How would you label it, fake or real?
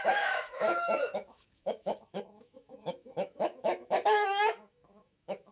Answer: fake